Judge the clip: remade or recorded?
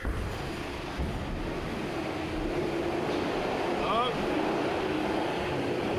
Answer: recorded